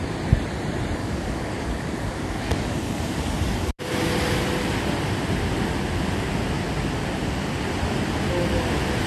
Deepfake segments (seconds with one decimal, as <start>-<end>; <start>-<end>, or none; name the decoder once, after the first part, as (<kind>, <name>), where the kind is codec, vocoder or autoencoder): 1.0-3.8 (codec, DAC)